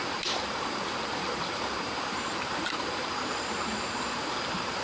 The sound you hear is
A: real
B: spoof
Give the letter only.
B